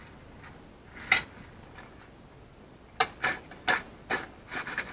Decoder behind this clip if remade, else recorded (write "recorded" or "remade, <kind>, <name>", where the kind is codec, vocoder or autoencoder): recorded